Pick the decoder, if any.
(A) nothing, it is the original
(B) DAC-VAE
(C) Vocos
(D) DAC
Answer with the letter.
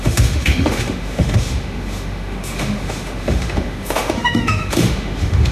B